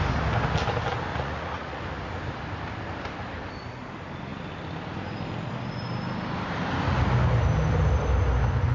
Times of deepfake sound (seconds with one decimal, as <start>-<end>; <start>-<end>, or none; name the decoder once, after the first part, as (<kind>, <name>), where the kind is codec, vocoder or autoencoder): 1.1-1.8 (vocoder, Vocos)

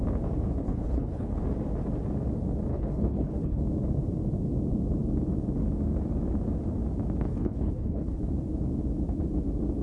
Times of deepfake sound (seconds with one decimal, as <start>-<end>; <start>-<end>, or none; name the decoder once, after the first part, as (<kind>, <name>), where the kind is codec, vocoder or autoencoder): 0.6-1.4 (codec, HILCodec); 2.7-3.6; 7.3-8.2